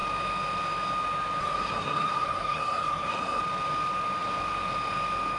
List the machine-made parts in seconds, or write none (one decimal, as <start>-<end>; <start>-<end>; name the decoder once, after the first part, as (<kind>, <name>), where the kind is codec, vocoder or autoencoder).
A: 1.4-3.4 (codec, SNAC)